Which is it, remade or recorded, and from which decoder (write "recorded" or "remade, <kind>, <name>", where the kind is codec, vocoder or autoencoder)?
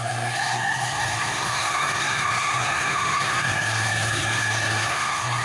remade, codec, SNAC